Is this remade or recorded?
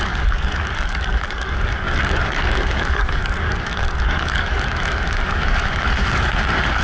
remade